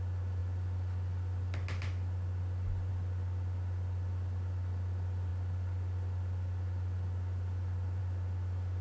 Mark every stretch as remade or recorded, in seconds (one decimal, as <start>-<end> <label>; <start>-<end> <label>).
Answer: 0.0-8.8 recorded